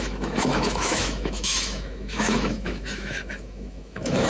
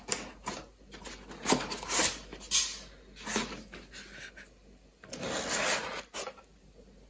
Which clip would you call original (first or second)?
second